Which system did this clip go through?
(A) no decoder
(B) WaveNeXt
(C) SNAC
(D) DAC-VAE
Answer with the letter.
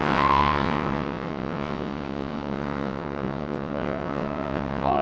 B